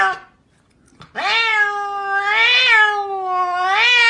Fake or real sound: real